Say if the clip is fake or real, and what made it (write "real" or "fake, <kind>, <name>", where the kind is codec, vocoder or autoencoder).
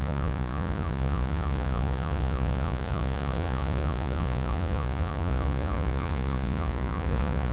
fake, vocoder, Vocos